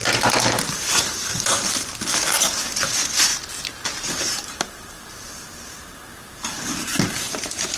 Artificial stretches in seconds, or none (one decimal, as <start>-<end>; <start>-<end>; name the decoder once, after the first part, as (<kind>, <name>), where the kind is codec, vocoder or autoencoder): 0.0-3.3 (vocoder, BigVGAN v2); 4.1-7.8